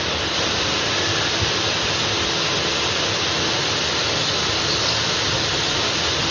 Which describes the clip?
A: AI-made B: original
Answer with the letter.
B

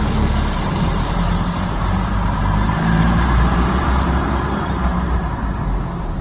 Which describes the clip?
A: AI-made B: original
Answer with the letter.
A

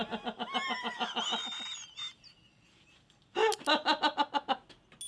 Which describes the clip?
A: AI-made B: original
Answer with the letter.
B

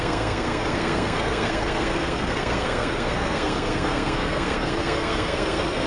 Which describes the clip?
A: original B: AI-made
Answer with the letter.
B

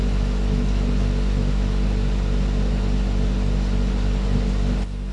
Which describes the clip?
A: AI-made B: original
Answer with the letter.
B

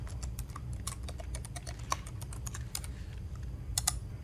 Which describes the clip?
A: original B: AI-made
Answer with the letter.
A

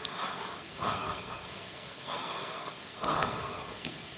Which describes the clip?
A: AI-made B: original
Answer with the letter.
A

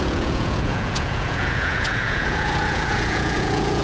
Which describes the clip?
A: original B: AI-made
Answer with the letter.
B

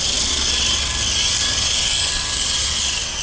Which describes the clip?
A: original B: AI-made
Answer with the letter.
A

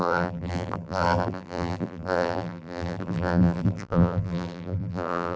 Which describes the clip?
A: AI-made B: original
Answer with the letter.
A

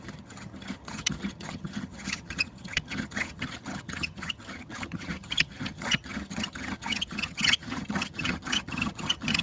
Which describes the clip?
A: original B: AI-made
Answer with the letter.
B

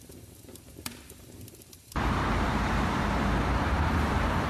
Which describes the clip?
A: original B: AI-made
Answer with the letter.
B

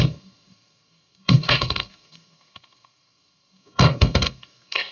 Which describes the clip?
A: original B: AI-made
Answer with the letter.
B